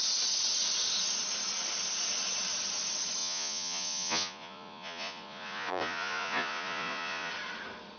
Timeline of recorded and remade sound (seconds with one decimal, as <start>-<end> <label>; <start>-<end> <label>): 0.0-3.2 recorded; 3.2-7.3 remade; 7.3-8.0 recorded